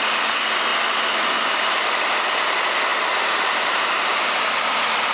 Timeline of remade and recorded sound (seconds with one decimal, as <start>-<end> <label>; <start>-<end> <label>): 0.0-2.9 recorded; 2.9-4.5 remade; 4.5-5.1 recorded